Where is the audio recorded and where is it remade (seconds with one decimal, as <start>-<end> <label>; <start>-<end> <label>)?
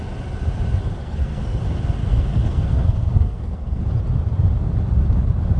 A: 0.0-1.0 recorded; 1.0-1.6 remade; 1.6-2.0 recorded; 2.0-3.8 remade; 3.8-5.6 recorded